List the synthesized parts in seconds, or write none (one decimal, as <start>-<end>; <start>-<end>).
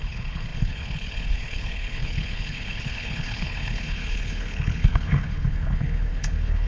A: 0.0-6.7